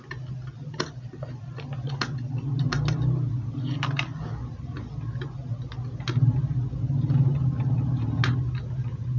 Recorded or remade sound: recorded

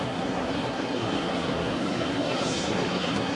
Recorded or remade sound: remade